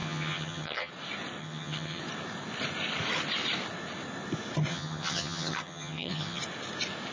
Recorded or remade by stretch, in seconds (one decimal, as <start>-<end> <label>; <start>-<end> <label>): 0.0-0.9 remade; 0.9-1.4 recorded; 1.4-2.0 remade; 2.0-4.7 recorded; 4.7-6.4 remade; 6.4-7.1 recorded